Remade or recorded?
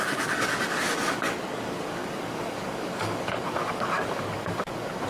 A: remade